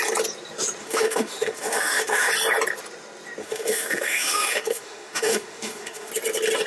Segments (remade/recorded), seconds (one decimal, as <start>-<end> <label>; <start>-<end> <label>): 0.0-0.8 recorded; 0.8-2.3 remade; 2.3-3.4 recorded; 3.4-6.1 remade; 6.1-6.7 recorded